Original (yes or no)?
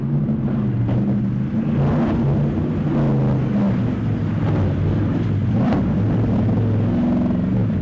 yes